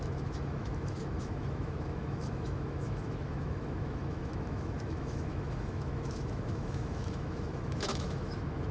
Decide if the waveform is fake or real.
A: fake